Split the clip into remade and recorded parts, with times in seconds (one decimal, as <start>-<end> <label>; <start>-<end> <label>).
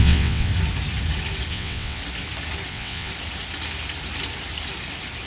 0.0-0.5 remade; 0.5-1.5 recorded; 1.5-2.0 remade; 2.0-2.7 recorded; 2.7-3.1 remade; 3.1-5.3 recorded